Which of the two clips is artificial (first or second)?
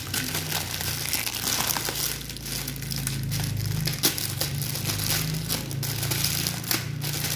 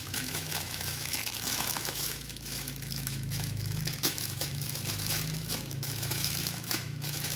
second